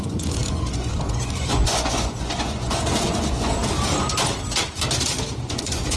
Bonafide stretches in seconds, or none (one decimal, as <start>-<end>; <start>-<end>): 3.6-5.4